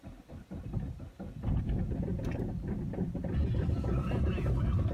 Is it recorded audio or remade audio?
remade